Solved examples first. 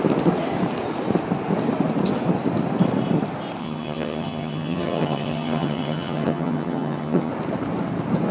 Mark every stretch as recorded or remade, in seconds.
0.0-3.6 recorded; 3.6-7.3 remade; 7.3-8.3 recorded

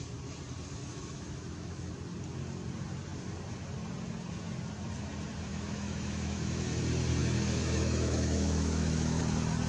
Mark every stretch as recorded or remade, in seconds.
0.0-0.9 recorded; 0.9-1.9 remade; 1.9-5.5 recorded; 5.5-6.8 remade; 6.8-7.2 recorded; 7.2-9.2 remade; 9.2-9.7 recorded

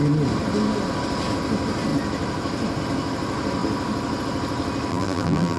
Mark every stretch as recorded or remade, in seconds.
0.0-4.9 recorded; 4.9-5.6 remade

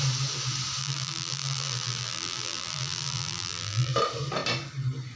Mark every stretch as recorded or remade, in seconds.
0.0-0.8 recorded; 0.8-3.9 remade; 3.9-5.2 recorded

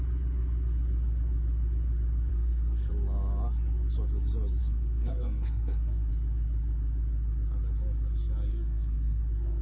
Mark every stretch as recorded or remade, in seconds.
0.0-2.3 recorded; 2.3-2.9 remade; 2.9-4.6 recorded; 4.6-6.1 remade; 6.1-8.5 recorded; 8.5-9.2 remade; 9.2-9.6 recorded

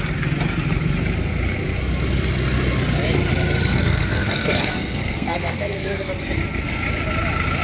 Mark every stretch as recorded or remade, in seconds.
0.0-3.7 recorded; 3.7-6.1 remade; 6.1-7.6 recorded